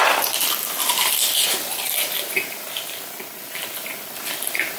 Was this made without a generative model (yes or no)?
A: yes